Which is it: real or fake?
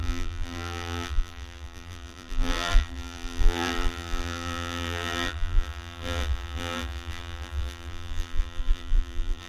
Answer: fake